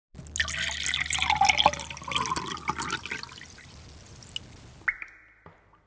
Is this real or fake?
real